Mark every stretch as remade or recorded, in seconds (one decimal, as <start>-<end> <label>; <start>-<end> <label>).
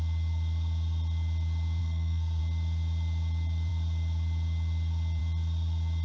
0.0-1.8 recorded; 1.8-2.4 remade; 2.4-6.0 recorded